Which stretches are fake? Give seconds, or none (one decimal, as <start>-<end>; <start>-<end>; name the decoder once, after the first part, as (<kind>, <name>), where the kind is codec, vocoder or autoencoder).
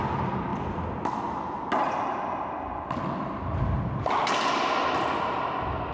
none